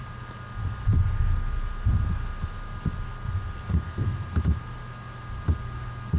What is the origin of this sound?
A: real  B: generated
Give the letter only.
A